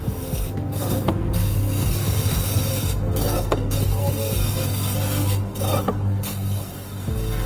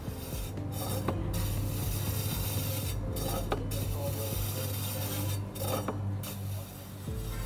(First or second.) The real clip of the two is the second